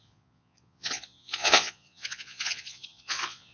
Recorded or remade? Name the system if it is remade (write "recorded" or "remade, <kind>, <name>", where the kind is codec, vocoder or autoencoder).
remade, vocoder, Vocos